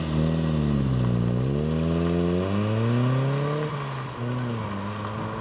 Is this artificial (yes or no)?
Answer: no